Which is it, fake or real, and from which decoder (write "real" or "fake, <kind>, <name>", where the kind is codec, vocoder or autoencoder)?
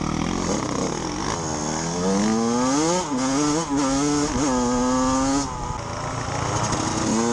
real